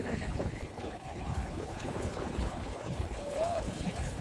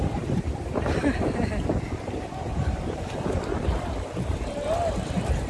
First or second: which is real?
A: second